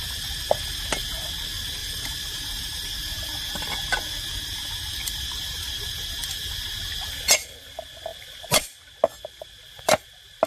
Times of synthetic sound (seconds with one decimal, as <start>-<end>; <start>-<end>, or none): 1.8-6.5

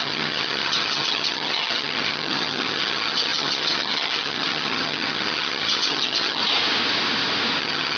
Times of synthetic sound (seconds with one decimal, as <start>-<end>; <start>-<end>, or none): 0.0-6.4; 7.6-8.0

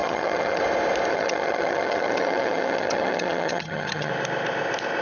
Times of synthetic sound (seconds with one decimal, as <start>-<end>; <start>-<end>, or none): 0.0-0.6; 1.1-4.1

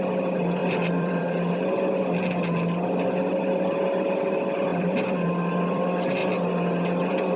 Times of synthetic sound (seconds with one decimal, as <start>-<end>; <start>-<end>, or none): 0.6-1.5; 4.7-5.8

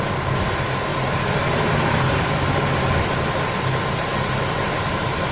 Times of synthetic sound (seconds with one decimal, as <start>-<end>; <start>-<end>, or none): none

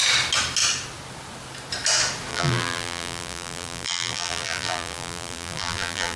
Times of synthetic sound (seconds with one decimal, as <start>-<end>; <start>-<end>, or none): 2.3-6.2

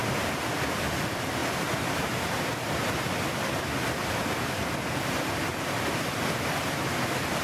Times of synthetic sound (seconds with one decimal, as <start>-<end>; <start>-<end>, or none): 0.5-7.4